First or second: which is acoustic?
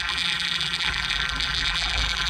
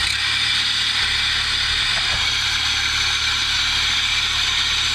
second